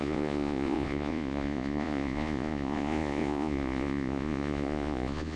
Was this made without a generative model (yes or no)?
no